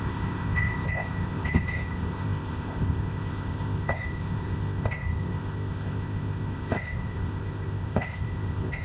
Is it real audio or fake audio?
fake